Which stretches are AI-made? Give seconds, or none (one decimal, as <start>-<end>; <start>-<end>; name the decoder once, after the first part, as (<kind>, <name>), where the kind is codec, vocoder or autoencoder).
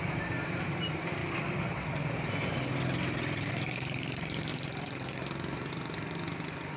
0.0-1.2 (vocoder, BigVGAN v2); 3.5-6.8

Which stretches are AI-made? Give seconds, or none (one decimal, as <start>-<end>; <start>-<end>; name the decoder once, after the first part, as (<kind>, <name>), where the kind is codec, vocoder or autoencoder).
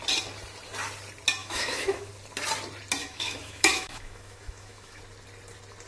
1.4-2.1 (autoencoder, DAC-VAE); 3.0-5.0